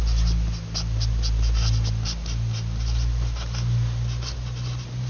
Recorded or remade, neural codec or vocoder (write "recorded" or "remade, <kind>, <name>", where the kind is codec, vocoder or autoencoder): recorded